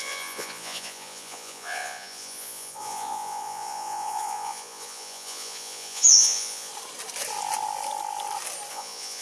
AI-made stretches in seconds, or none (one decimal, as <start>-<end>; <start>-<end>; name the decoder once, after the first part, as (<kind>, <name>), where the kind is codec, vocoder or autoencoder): 0.0-6.7 (vocoder, Vocos); 8.7-9.2

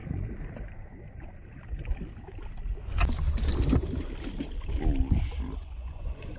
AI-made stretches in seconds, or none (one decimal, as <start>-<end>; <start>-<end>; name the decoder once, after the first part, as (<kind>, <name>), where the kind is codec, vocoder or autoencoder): 5.6-6.4 (vocoder, Vocos)

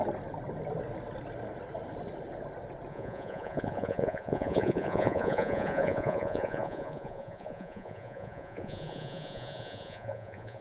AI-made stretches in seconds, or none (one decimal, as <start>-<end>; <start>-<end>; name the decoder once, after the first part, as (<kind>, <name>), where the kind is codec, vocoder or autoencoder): 2.9-10.6 (vocoder, Vocos)

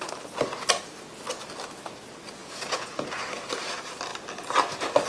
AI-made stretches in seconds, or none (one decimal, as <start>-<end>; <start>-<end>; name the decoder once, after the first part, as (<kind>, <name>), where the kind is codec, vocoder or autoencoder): 2.4-3.2 (vocoder, Vocos)

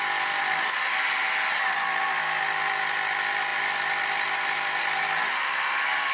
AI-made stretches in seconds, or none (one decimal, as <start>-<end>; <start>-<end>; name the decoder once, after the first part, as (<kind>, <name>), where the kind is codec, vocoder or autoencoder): none

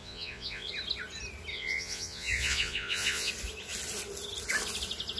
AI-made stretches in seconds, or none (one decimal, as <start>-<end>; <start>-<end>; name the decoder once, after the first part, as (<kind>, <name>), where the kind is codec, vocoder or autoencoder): 0.0-0.7 (vocoder, Vocos); 1.5-3.3

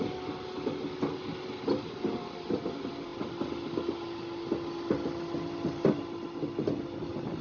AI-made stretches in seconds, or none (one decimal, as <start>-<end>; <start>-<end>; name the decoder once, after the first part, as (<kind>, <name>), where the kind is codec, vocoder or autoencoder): none